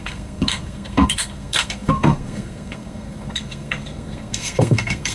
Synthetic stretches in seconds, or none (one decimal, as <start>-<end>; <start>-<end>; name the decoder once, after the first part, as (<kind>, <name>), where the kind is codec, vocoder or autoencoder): 0.0-5.1 (codec, SNAC)